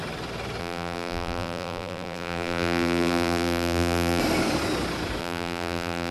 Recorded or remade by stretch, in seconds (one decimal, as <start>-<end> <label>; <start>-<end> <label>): 0.0-0.6 recorded; 0.6-4.2 remade; 4.2-5.2 recorded; 5.2-6.1 remade